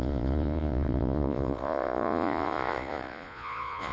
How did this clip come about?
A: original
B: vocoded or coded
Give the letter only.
B